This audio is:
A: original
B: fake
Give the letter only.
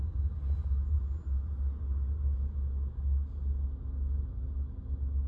A